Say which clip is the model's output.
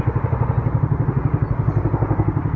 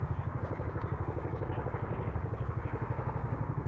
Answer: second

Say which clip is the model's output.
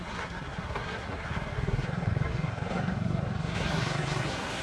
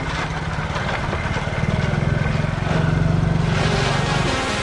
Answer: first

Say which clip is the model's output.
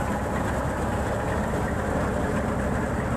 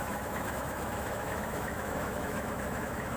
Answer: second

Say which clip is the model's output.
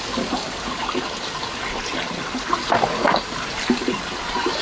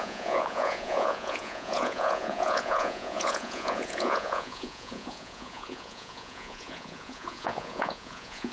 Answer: second